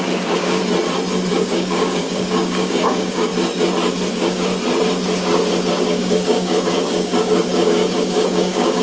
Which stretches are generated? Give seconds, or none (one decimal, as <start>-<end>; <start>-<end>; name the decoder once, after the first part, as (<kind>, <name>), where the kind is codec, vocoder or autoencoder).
0.0-0.6 (codec, DAC); 1.3-3.3; 4.1-4.5; 5.7-8.8